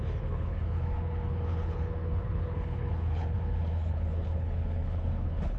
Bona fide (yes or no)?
no